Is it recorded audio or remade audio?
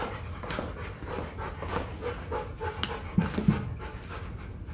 recorded